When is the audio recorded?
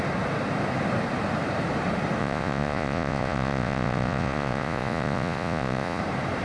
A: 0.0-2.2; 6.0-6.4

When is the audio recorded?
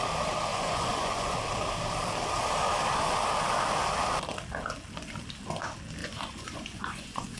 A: 0.0-0.5; 1.4-6.0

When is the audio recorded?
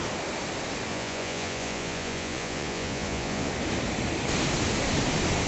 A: 0.0-0.9; 3.5-5.5